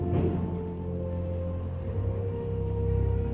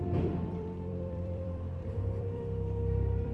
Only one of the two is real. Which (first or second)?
first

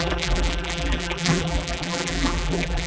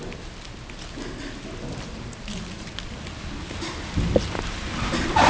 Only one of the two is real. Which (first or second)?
second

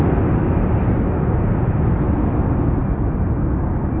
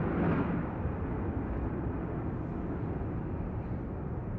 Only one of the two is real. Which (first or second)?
first